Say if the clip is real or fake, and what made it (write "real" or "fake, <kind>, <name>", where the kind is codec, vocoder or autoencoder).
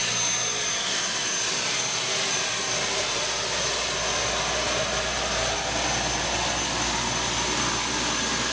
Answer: real